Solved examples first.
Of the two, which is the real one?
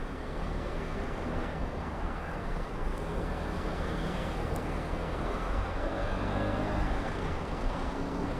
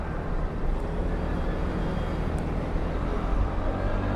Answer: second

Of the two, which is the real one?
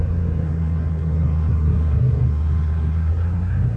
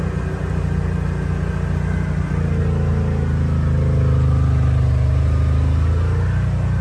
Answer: second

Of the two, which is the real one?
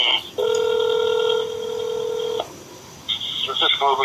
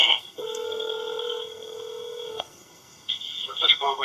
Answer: first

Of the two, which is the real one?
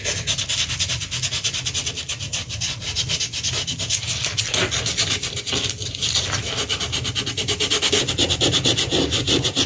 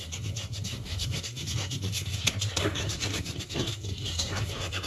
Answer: first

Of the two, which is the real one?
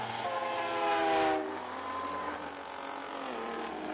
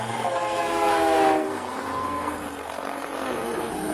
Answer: first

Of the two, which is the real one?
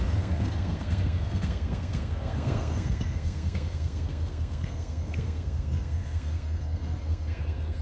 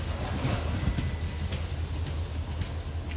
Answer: second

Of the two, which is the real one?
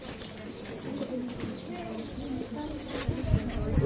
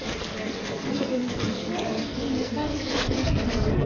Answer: first